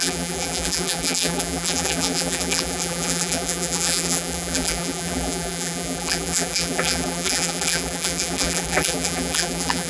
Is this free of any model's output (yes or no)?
no